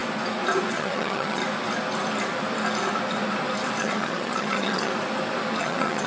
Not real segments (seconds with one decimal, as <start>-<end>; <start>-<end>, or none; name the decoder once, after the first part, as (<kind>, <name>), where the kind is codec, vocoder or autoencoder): 0.7-1.4 (vocoder, HiFi-GAN); 3.8-4.9; 5.6-6.1